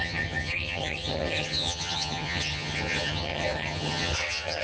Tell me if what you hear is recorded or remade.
remade